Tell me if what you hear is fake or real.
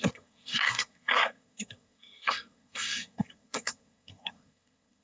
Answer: fake